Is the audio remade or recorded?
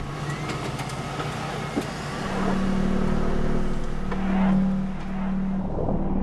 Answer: recorded